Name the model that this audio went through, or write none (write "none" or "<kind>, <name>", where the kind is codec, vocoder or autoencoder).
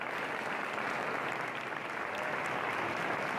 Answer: none